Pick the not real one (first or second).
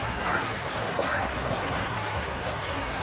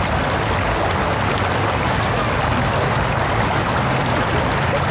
first